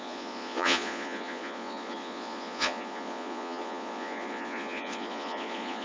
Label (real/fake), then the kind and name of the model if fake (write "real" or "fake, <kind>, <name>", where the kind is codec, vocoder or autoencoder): fake, vocoder, Vocos